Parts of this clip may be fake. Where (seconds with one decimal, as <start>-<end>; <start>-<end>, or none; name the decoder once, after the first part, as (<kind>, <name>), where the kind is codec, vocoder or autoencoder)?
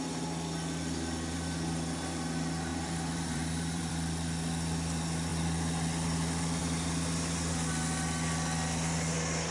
2.7-3.9 (vocoder, BigVGAN v2)